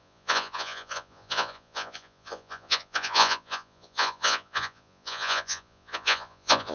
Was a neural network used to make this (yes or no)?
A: yes